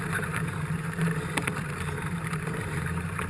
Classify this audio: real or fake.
fake